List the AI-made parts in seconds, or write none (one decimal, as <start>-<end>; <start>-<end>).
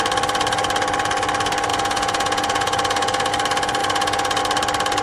1.7-3.3; 3.8-4.4